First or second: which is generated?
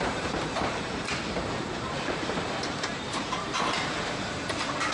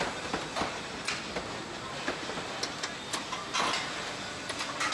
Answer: first